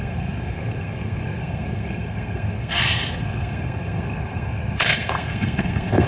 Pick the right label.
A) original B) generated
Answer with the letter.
B